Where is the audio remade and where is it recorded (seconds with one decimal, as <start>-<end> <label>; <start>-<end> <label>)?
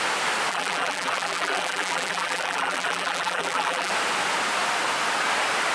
0.0-0.5 recorded; 0.5-3.9 remade; 3.9-5.7 recorded